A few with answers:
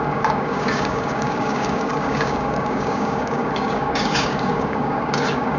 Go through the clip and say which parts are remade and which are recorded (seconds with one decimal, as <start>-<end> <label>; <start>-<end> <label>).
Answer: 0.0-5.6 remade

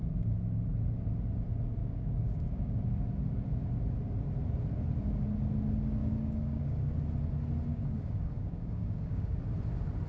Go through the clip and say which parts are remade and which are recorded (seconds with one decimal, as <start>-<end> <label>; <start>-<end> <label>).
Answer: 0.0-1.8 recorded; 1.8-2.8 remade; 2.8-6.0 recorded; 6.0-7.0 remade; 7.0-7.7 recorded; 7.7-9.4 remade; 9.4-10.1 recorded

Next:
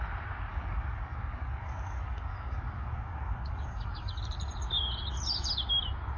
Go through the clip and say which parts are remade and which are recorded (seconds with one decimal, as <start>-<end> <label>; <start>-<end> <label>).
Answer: 0.0-0.5 recorded; 0.5-4.2 remade; 4.2-6.2 recorded

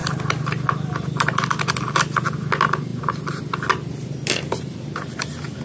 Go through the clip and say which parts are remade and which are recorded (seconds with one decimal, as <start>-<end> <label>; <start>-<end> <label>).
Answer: 0.0-5.6 recorded